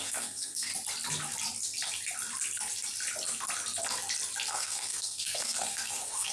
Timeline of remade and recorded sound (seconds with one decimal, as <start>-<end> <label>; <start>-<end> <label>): 0.0-0.7 remade; 0.7-4.5 recorded; 4.5-6.3 remade